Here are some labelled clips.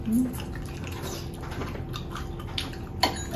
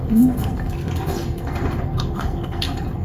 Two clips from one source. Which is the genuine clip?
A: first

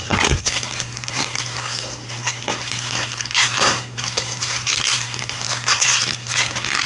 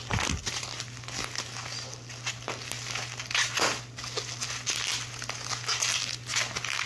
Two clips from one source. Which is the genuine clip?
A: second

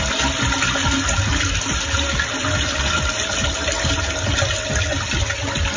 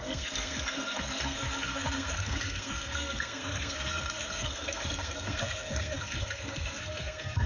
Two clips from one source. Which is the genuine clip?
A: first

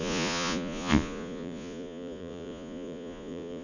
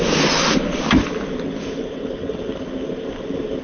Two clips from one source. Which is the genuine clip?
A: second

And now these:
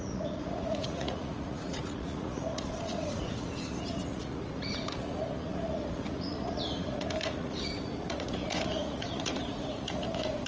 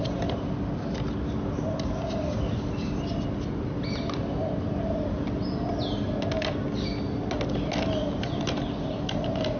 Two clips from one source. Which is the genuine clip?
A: second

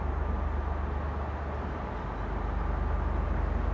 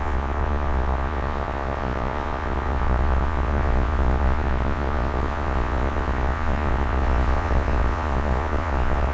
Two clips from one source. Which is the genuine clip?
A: first